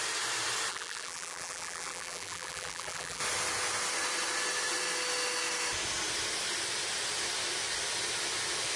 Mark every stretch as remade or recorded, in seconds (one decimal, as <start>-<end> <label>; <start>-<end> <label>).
0.0-0.7 recorded; 0.7-3.2 remade; 3.2-8.8 recorded